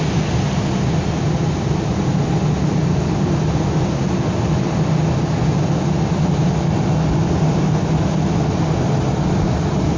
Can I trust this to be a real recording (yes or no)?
yes